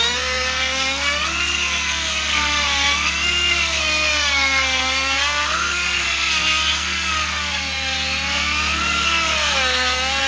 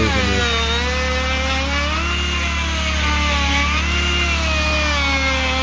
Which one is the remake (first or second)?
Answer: first